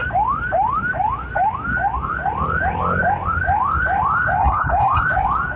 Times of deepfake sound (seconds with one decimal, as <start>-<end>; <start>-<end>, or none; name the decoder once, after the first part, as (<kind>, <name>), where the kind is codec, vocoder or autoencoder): 4.4-5.0 (codec, HILCodec)

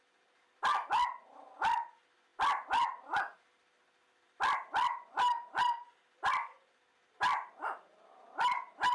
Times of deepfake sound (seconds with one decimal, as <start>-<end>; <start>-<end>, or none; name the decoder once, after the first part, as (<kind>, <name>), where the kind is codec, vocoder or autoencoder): none

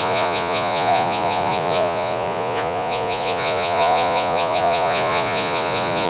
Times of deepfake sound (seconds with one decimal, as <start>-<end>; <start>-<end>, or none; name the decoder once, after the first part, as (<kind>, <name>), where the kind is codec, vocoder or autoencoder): 0.0-6.1 (vocoder, Vocos)

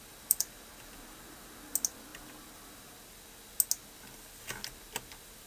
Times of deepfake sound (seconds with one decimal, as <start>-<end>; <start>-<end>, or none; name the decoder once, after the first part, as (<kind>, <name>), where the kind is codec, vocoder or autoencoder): none

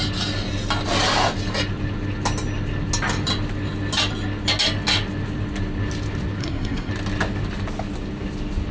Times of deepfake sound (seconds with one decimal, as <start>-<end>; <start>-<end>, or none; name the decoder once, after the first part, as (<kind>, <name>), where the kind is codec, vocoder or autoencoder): 6.4-6.9 (codec, SNAC)

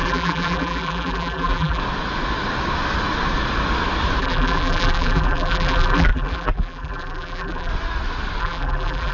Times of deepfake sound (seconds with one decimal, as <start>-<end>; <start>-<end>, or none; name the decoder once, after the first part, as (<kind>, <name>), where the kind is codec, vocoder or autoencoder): 0.0-1.8 (vocoder, BigVGAN v2); 4.2-7.7; 8.4-9.1

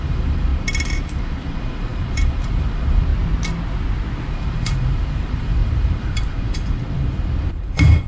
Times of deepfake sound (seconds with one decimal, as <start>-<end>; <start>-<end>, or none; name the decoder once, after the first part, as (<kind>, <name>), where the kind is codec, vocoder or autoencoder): 0.0-3.1 (vocoder, BigVGAN v2); 4.3-8.1

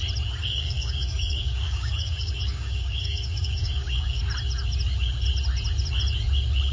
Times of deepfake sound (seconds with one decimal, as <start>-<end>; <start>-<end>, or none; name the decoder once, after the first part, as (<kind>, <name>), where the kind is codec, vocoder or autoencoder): 0.4-4.2 (codec, DAC)